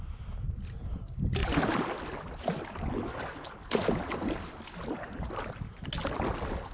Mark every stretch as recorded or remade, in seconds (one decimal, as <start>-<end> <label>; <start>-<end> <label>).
0.0-6.7 recorded